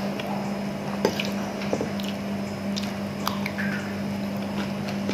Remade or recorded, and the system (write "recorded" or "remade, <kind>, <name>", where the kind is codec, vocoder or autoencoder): recorded